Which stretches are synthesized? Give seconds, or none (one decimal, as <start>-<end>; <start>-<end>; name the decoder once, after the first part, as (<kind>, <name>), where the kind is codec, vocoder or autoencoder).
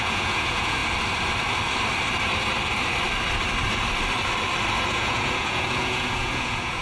0.0-0.8 (vocoder, Vocos); 4.9-6.8